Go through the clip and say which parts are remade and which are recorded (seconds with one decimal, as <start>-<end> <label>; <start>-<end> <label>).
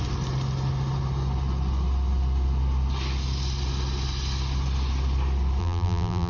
0.0-5.6 recorded; 5.6-6.3 remade